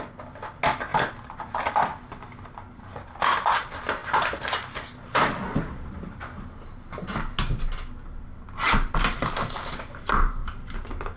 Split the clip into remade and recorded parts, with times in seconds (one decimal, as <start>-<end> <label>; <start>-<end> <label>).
0.0-11.2 recorded